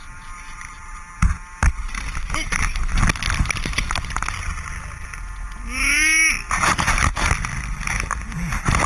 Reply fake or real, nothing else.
real